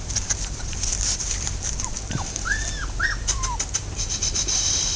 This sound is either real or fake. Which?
fake